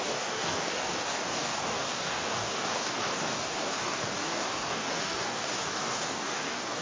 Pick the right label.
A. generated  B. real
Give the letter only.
A